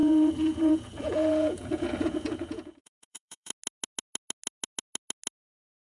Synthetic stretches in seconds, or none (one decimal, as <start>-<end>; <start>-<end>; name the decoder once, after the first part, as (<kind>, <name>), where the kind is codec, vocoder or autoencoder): 0.0-3.5 (vocoder, Vocos)